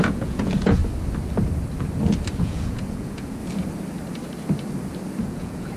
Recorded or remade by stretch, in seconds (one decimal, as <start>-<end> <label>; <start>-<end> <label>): 0.0-0.8 remade; 0.8-2.4 recorded; 2.4-3.4 remade; 3.4-5.2 recorded; 5.2-5.8 remade